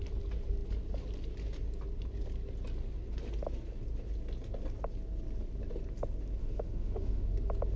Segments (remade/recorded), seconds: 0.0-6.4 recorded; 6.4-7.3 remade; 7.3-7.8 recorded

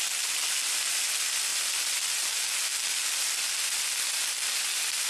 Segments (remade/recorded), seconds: 0.0-5.1 recorded

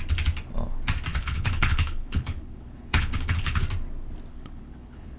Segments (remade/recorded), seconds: 0.0-1.1 recorded; 1.1-3.6 remade; 3.6-4.3 recorded; 4.3-5.2 remade

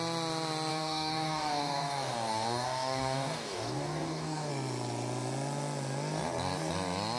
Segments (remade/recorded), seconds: 0.0-0.7 recorded; 0.7-4.5 remade; 4.5-7.2 recorded